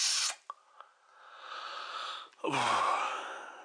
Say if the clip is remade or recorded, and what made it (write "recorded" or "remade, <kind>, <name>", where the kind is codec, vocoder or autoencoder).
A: recorded